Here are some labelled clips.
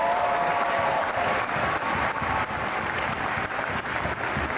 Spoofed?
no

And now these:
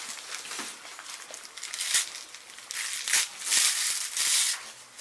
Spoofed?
no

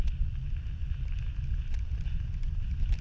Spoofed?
no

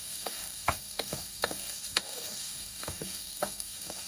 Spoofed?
yes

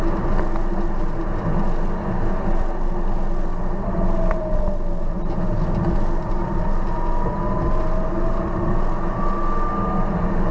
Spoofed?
no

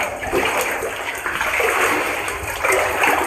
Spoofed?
no